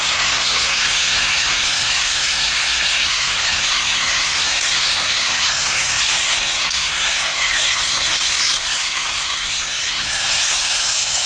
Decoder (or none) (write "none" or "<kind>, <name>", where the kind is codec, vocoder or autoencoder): codec, SNAC